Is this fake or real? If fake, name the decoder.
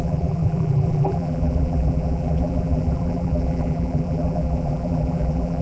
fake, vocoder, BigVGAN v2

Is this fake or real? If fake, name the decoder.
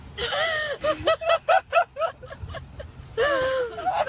real